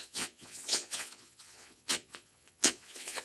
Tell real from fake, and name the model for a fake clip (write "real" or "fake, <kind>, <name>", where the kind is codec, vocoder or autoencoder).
fake, vocoder, Vocos